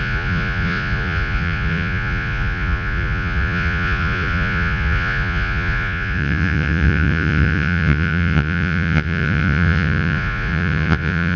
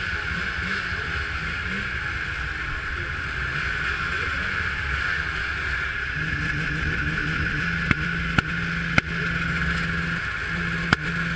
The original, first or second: second